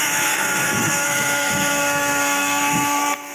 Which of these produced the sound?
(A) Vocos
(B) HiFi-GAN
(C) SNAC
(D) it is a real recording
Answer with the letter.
C